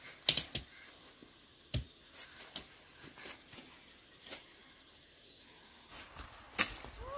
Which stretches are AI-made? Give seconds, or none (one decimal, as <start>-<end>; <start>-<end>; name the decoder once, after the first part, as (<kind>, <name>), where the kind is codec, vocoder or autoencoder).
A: none